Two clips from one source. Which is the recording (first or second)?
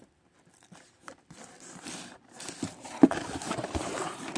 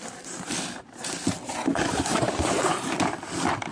second